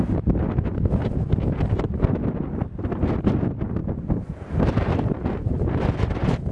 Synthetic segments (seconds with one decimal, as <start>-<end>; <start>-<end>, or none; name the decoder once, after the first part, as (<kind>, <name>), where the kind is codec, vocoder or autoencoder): 3.8-6.5 (vocoder, BigVGAN v2)